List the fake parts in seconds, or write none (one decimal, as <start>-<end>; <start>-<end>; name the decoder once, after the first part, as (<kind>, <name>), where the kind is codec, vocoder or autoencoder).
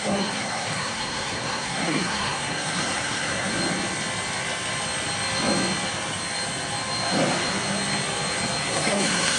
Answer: 0.0-3.5 (codec, SNAC); 8.7-9.4